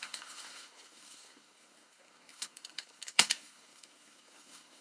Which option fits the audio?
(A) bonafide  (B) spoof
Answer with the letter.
B